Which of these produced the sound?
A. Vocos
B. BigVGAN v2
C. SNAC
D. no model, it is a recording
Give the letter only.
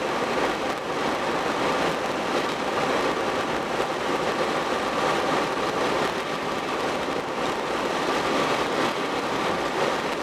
D